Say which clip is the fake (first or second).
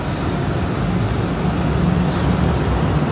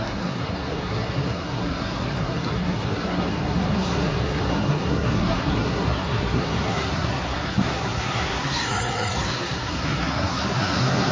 second